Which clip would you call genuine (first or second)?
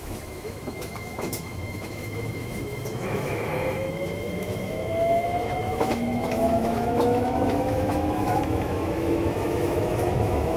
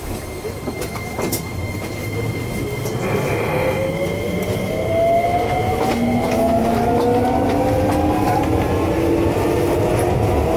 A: second